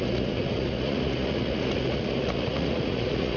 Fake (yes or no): yes